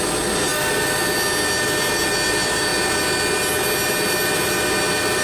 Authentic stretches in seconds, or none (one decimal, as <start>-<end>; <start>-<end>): 0.0-5.2